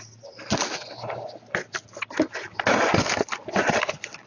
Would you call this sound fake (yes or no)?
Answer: no